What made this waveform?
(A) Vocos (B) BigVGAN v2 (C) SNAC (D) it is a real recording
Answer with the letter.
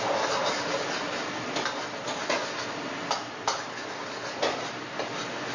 D